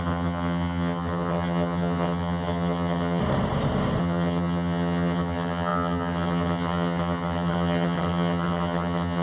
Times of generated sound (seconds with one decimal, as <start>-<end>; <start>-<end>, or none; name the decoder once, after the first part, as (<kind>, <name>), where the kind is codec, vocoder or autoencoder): 0.0-3.2 (vocoder, HiFi-GAN); 4.0-9.2